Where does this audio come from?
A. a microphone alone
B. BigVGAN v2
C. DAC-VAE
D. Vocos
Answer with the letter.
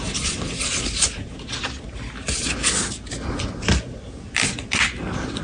A